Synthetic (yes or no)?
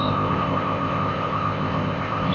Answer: yes